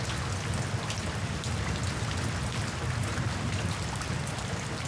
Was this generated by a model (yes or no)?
no